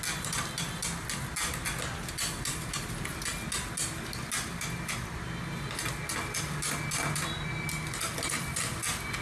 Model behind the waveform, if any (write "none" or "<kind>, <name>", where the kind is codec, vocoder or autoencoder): none